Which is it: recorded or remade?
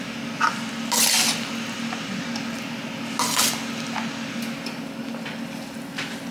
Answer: recorded